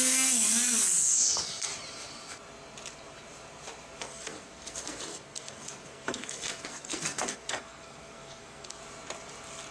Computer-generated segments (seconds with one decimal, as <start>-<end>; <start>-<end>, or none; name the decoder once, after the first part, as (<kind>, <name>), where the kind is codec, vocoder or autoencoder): 0.0-1.7 (codec, SNAC); 4.0-8.8